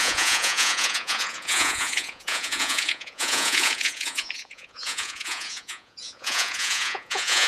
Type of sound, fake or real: fake